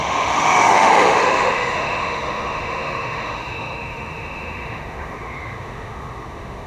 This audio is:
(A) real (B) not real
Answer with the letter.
B